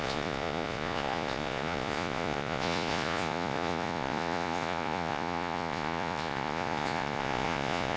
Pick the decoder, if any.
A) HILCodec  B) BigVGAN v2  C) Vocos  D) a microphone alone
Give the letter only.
C